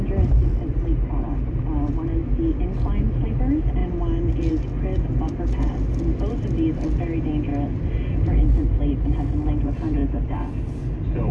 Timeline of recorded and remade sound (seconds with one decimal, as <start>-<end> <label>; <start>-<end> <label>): 0.0-11.3 recorded

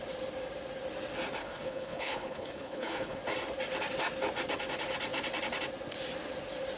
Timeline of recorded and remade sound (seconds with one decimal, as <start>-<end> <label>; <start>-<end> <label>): 0.0-1.4 recorded; 1.4-3.2 remade; 3.2-6.8 recorded

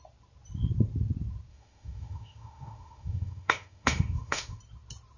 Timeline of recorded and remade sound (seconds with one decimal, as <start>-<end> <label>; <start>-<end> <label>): 0.0-1.5 recorded; 1.5-4.6 remade; 4.6-5.2 recorded